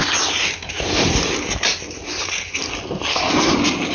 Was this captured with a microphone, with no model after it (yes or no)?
yes